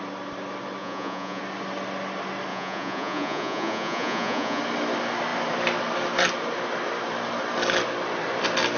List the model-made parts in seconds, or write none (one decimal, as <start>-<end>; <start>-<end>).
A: 0.8-1.4; 2.5-4.6